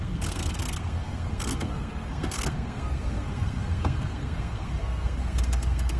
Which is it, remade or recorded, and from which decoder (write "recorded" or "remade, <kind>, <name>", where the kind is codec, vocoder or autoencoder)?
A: remade, codec, SNAC